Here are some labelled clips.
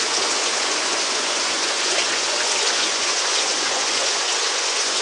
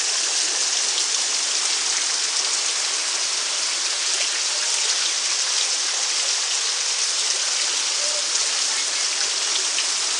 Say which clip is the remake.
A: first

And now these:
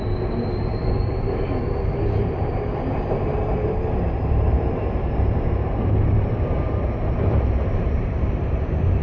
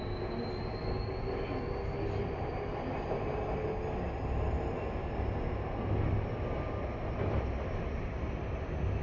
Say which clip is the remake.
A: first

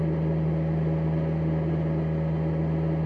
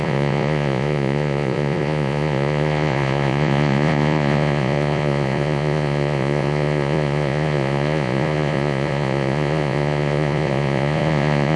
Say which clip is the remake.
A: second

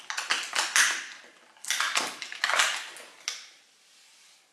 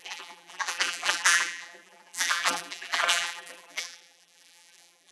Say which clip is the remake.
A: second